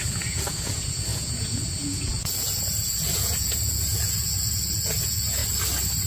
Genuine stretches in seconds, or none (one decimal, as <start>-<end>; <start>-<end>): 5.4-6.1

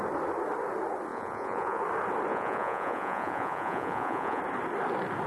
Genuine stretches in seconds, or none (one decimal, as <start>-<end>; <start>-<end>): 0.0-1.1; 1.8-2.3; 4.4-5.3

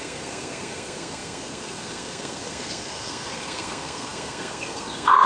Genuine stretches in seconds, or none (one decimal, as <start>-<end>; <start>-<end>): none